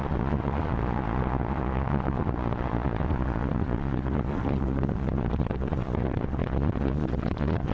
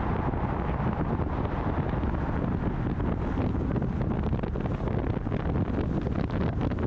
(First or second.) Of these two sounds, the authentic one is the second